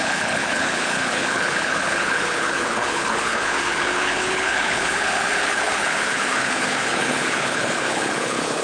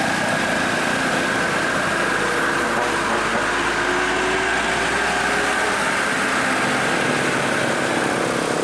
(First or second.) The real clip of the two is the second